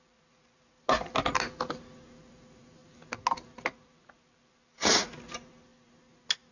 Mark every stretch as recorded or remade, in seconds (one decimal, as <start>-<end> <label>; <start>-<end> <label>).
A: 0.0-6.5 recorded